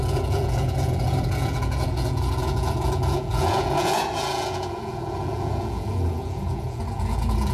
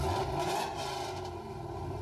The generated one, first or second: first